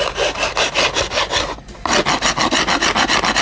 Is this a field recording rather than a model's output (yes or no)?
yes